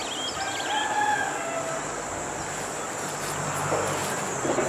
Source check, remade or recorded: recorded